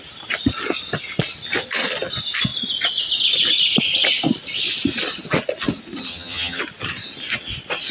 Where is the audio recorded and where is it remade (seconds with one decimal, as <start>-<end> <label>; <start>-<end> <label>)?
0.0-6.1 recorded; 6.1-6.6 remade; 6.6-7.9 recorded